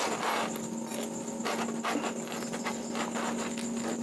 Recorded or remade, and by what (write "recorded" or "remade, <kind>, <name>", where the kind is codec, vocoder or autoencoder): recorded